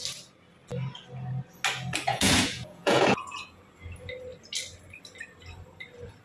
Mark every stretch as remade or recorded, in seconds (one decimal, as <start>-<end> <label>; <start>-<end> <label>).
0.0-2.1 recorded; 2.1-3.6 remade; 3.6-6.2 recorded